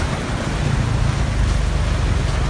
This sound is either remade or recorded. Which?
recorded